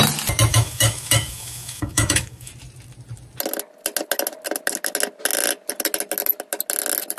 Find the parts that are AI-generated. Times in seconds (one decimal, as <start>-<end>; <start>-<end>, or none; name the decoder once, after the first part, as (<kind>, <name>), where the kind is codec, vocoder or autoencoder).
0.5-2.5 (autoencoder, DAC-VAE)